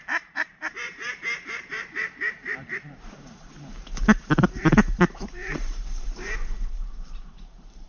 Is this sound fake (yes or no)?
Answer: yes